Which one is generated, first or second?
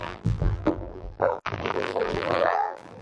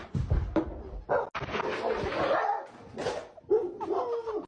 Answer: first